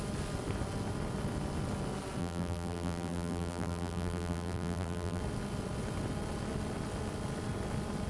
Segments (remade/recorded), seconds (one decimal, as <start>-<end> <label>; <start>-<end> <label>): 0.0-2.2 recorded; 2.2-5.2 remade; 5.2-8.1 recorded

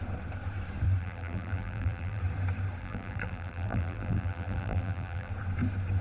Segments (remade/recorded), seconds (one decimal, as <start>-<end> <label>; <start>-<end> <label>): 0.0-1.0 recorded; 1.0-2.2 remade; 2.2-2.8 recorded; 2.8-5.3 remade; 5.3-6.0 recorded